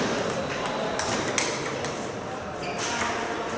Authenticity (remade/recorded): recorded